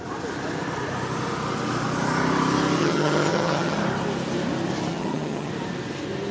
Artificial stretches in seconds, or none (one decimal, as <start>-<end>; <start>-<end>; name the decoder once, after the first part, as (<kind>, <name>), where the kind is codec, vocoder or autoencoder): 2.8-3.8 (vocoder, HiFi-GAN); 4.9-5.5